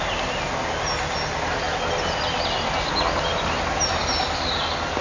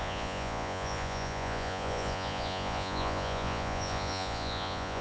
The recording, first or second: first